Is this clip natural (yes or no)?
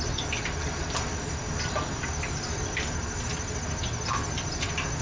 yes